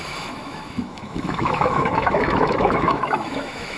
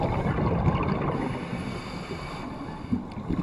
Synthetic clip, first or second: first